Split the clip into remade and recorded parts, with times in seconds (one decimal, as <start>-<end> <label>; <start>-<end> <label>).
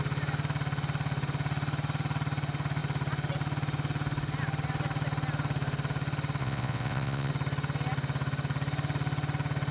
0.0-6.4 recorded; 6.4-7.3 remade; 7.3-9.7 recorded